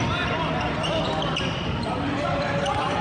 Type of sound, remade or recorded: recorded